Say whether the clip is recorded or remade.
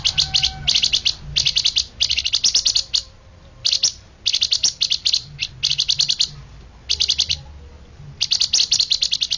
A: recorded